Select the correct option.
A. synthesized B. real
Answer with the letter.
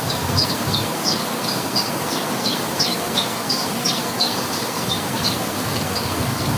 A